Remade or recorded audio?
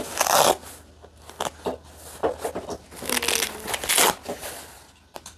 recorded